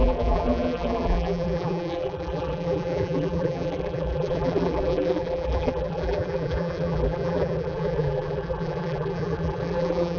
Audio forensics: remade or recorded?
remade